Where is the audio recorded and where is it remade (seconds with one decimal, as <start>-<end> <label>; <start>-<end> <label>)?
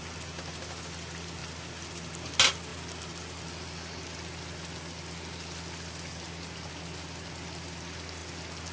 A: 0.0-8.7 recorded